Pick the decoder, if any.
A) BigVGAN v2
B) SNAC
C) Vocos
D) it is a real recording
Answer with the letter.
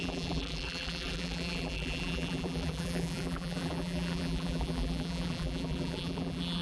A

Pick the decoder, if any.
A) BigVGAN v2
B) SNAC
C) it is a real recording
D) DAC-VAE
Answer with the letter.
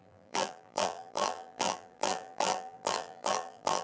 A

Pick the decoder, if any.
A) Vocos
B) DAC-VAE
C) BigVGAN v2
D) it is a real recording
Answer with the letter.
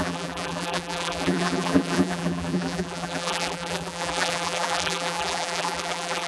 C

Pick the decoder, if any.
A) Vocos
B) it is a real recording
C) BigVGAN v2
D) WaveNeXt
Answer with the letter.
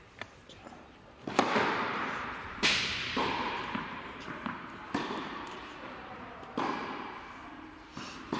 C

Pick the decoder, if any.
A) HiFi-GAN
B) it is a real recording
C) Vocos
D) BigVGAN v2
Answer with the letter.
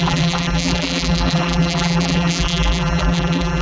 D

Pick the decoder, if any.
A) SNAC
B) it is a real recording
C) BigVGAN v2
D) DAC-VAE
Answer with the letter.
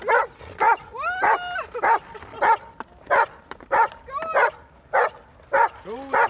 B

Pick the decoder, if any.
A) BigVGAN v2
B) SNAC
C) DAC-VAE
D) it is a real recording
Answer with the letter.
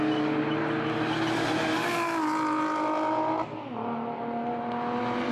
D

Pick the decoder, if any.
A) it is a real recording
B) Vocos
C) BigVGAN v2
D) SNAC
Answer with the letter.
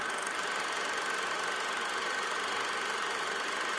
A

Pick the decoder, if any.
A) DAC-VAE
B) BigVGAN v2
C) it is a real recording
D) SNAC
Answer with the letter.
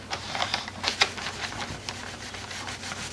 C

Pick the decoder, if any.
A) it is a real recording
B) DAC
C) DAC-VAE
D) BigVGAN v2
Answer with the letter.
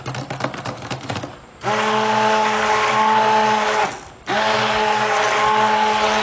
A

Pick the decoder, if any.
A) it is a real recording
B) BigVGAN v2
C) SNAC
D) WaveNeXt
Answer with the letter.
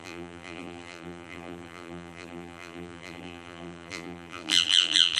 B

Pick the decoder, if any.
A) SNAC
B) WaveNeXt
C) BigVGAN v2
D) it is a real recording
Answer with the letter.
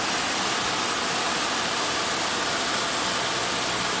D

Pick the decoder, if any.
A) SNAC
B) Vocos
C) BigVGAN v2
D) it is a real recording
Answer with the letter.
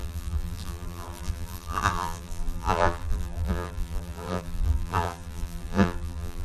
C